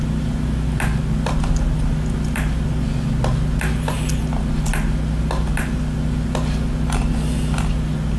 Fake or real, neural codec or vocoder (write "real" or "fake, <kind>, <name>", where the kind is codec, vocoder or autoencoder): real